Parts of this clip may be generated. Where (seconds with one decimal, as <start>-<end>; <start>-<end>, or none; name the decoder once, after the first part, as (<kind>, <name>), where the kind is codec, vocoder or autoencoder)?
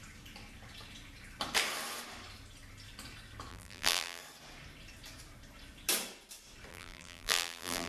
3.5-4.2 (vocoder, BigVGAN v2); 6.7-7.9